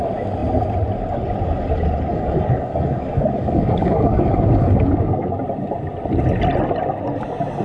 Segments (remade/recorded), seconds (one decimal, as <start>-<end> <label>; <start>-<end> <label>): 0.0-2.1 recorded; 2.1-5.3 remade; 5.3-7.6 recorded